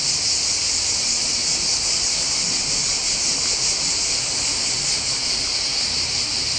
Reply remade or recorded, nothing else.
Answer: recorded